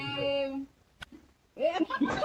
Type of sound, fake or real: fake